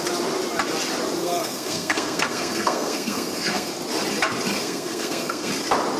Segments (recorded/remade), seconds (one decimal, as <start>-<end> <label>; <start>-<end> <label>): 0.0-1.2 recorded; 1.2-3.7 remade; 3.7-4.6 recorded; 4.6-5.5 remade; 5.5-6.0 recorded